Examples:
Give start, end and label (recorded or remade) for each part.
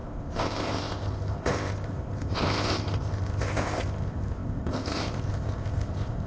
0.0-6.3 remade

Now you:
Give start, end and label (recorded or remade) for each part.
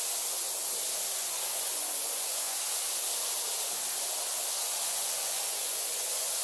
0.0-1.2 recorded; 1.2-2.6 remade; 2.6-4.6 recorded; 4.6-6.4 remade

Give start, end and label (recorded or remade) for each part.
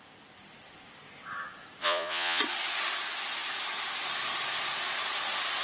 0.0-1.8 recorded; 1.8-2.4 remade; 2.4-5.6 recorded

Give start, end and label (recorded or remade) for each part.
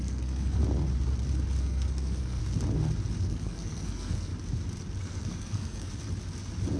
0.0-0.6 remade; 0.6-1.6 recorded; 1.6-2.4 remade; 2.4-3.2 recorded; 3.2-4.3 remade; 4.3-5.0 recorded; 5.0-5.9 remade; 5.9-6.8 recorded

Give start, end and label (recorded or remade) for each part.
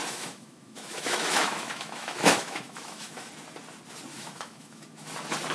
0.0-3.3 remade; 3.3-4.1 recorded; 4.1-5.1 remade; 5.1-5.5 recorded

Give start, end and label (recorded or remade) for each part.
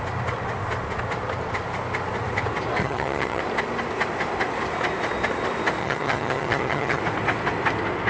0.0-2.8 recorded; 2.8-3.4 remade; 3.4-5.8 recorded; 5.8-7.0 remade; 7.0-8.1 recorded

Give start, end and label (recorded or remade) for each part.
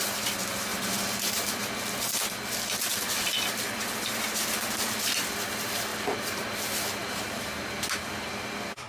0.0-0.7 recorded; 0.7-2.2 remade; 2.2-5.9 recorded; 5.9-6.6 remade; 6.6-8.9 recorded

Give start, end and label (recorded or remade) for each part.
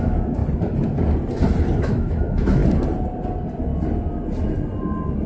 0.0-0.4 remade; 0.4-1.8 recorded; 1.8-2.6 remade; 2.6-5.3 recorded